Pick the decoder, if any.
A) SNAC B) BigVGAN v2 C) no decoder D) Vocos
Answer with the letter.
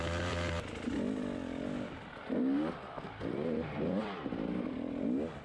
B